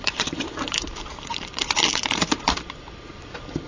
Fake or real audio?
fake